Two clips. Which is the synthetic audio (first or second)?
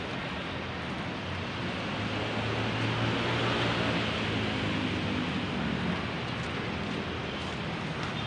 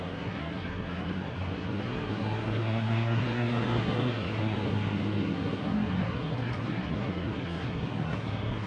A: second